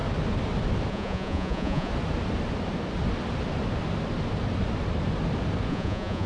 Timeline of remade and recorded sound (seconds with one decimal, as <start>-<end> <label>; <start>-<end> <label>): 0.0-0.9 recorded; 0.9-1.9 remade; 1.9-5.7 recorded; 5.7-6.3 remade